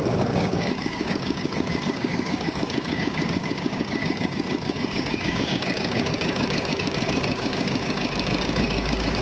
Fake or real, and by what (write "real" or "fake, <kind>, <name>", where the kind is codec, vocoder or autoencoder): fake, codec, DAC